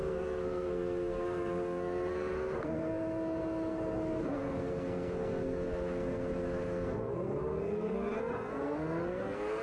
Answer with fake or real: fake